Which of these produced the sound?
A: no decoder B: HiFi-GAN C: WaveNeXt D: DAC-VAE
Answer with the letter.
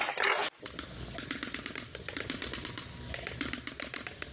A